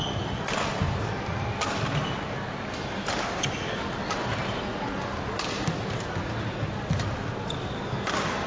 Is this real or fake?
real